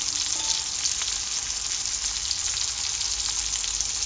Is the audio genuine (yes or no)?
yes